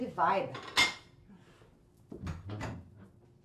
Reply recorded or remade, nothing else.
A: recorded